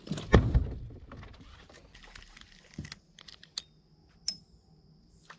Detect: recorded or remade recorded